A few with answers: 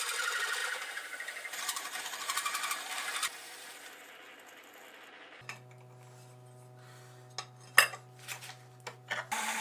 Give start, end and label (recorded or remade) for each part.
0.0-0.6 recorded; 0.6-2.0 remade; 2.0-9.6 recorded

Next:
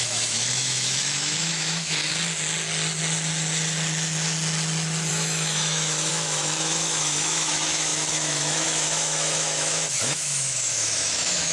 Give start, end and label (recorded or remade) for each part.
0.0-2.1 remade; 2.1-5.1 recorded; 5.1-11.5 remade

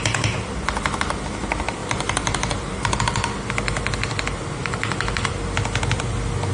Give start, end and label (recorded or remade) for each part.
0.0-1.8 recorded; 1.8-3.0 remade; 3.0-6.5 recorded

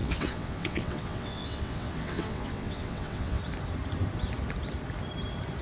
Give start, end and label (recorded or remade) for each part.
0.0-3.4 remade; 3.4-5.6 recorded

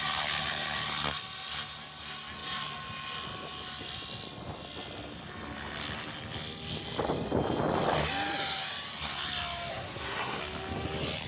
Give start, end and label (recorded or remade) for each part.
0.0-9.7 recorded; 9.7-10.4 remade; 10.4-11.3 recorded

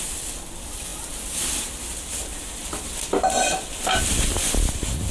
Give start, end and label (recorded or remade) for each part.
0.0-5.1 recorded

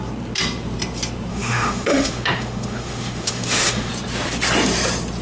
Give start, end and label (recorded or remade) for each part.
0.0-1.3 recorded; 1.3-3.9 remade; 3.9-5.2 recorded

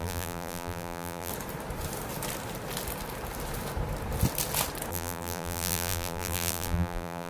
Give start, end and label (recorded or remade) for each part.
0.0-1.3 remade; 1.3-4.9 recorded; 4.9-7.3 remade